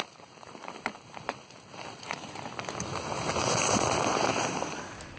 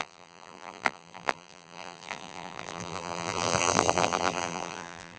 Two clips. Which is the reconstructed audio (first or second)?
second